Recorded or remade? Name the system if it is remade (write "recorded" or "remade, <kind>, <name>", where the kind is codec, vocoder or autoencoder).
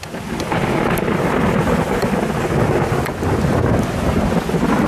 recorded